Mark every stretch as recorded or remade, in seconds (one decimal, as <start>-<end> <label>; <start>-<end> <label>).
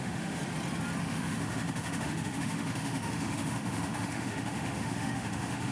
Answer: 0.0-0.4 remade; 0.4-1.0 recorded; 1.0-5.7 remade